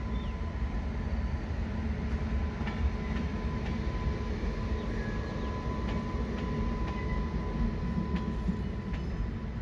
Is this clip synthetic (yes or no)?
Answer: no